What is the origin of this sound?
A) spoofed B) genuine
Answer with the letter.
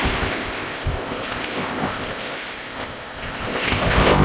A